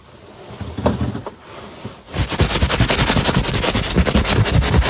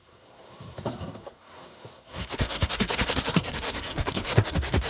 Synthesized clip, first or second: second